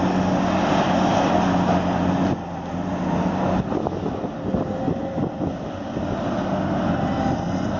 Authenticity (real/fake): real